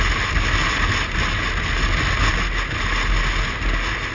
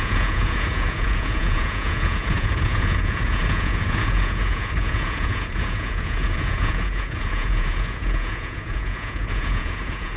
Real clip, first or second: first